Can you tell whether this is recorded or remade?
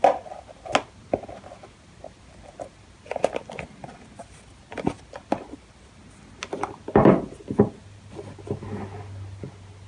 recorded